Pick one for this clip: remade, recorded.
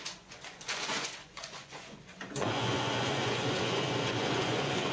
remade